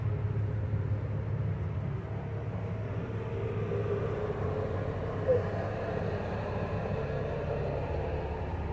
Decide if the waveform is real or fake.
real